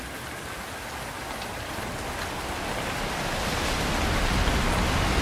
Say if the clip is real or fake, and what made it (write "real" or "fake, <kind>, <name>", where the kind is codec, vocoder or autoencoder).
real